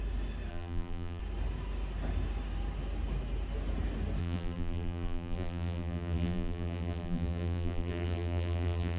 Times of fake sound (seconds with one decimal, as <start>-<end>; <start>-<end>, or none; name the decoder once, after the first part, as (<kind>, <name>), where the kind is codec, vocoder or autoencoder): 0.5-1.2 (vocoder, BigVGAN v2); 4.2-9.0